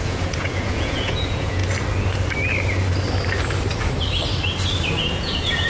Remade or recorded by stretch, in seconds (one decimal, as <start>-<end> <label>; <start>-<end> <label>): 0.0-1.6 remade; 1.6-5.0 recorded; 5.0-5.7 remade